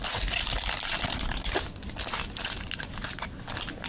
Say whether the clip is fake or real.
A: real